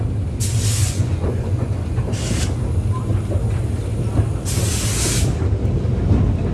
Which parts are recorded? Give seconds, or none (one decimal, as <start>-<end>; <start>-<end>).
0.0-0.8; 2.0-6.5